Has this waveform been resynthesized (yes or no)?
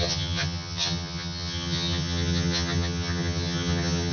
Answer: yes